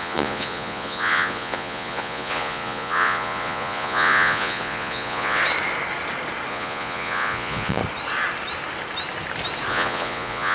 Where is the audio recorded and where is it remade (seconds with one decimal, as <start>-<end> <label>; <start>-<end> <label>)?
0.0-5.4 remade; 5.4-6.5 recorded; 6.5-7.8 remade; 7.8-9.7 recorded; 9.7-10.5 remade